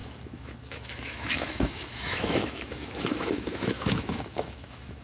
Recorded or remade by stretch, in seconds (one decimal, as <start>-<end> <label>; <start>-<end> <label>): 0.0-5.0 remade